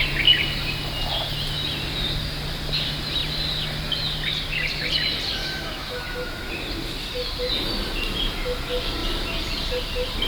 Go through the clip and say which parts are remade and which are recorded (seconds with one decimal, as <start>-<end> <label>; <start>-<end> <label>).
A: 0.0-5.4 recorded; 5.4-6.5 remade; 6.5-10.3 recorded